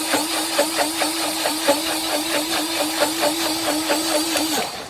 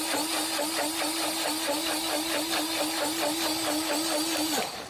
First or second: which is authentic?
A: second